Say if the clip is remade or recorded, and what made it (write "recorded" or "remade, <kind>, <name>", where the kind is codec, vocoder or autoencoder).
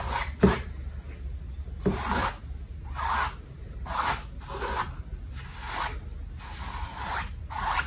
recorded